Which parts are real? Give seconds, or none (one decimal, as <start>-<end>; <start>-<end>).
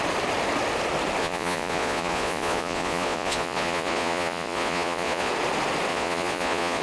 0.0-1.2; 5.3-5.9